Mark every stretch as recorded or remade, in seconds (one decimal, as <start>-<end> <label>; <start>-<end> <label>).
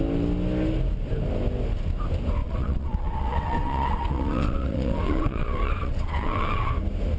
0.0-2.4 recorded; 2.4-6.7 remade; 6.7-7.2 recorded